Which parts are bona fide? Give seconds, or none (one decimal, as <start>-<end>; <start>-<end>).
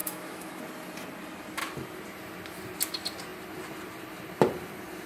0.6-5.1